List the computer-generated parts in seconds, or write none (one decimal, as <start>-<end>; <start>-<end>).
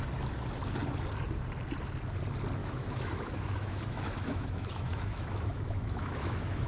2.6-6.7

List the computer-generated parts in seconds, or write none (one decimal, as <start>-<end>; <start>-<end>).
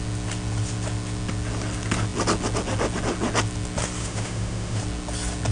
4.0-4.8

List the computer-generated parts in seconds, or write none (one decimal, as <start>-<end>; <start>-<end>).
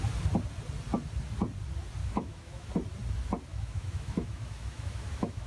2.0-2.7; 3.5-5.5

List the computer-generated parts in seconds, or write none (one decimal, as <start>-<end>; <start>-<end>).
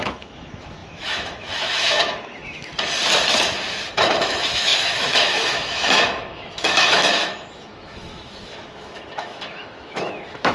0.0-2.7; 3.9-10.5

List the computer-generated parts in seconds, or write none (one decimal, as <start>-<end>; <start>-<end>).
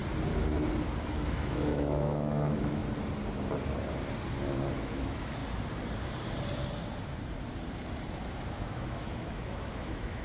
1.1-2.8; 4.7-5.4; 8.6-10.2